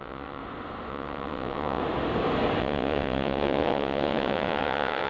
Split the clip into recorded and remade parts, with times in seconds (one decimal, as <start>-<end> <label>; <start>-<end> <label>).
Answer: 0.0-0.4 remade; 0.4-0.9 recorded; 0.9-1.8 remade; 1.8-2.6 recorded; 2.6-5.1 remade